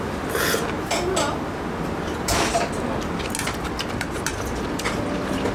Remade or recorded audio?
recorded